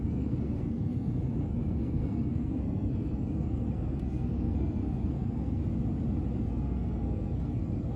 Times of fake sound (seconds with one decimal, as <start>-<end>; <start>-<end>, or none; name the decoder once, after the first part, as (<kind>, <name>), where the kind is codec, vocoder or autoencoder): 0.0-5.6 (codec, SNAC); 6.4-8.0